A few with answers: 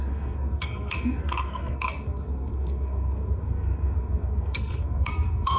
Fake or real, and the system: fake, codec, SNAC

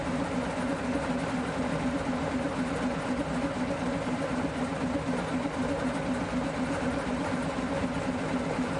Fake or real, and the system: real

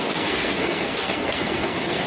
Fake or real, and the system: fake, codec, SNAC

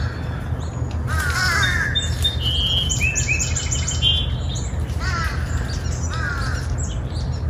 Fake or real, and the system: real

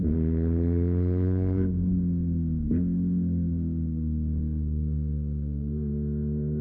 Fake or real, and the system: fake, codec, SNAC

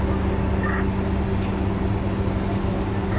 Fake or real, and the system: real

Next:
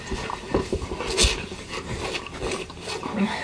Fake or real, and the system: real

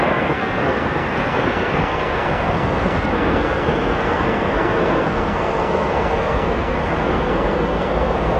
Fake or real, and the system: fake, codec, SNAC